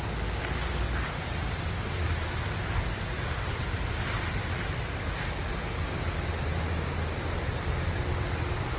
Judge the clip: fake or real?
real